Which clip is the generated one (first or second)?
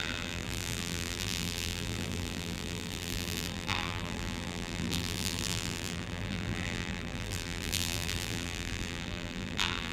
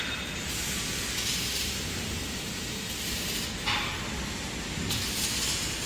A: first